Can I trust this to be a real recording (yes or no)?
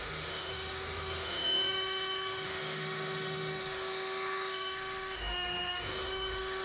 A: no